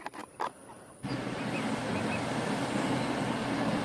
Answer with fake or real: real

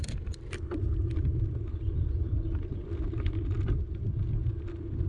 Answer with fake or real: fake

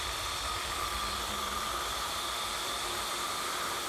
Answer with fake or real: fake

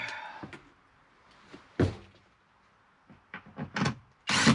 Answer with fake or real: real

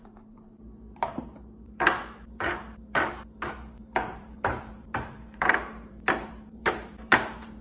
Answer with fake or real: fake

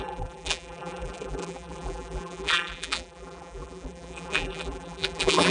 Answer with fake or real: fake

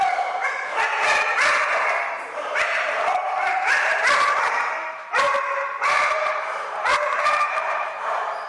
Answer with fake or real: fake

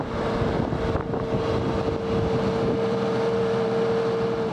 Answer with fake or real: fake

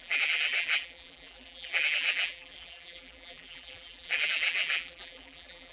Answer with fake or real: fake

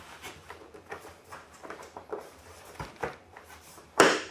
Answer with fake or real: fake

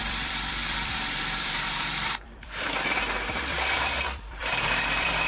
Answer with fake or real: fake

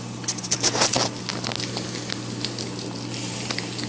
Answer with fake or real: real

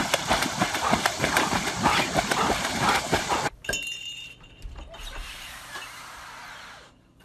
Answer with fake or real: fake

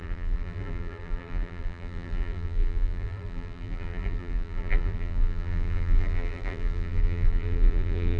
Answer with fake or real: fake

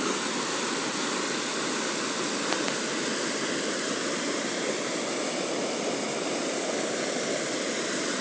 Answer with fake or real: real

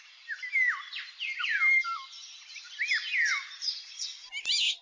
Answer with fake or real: real